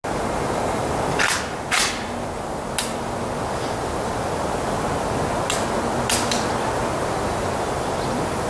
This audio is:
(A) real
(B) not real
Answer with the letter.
A